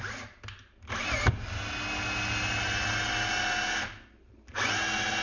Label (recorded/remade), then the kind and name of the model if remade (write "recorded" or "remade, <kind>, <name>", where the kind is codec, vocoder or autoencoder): recorded